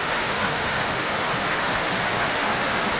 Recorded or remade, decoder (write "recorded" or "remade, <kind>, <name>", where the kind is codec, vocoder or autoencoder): remade, autoencoder, DAC-VAE